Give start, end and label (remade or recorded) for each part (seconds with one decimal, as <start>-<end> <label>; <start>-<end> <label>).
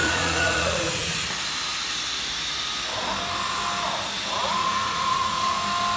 0.0-1.2 remade; 1.2-4.4 recorded; 4.4-5.6 remade; 5.6-6.0 recorded